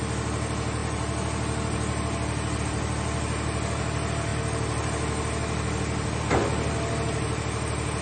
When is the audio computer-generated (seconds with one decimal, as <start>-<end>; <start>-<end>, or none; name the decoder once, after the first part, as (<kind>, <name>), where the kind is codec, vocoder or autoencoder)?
none